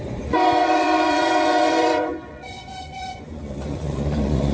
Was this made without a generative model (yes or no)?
no